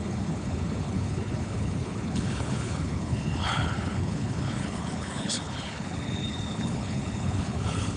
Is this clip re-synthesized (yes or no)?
yes